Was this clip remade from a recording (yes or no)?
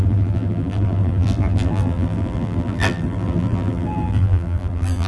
yes